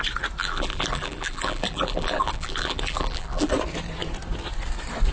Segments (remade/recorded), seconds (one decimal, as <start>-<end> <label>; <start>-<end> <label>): 0.0-0.4 recorded; 0.4-3.5 remade; 3.5-5.1 recorded